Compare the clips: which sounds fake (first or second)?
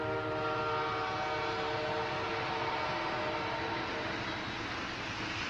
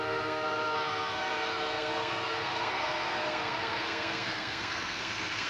second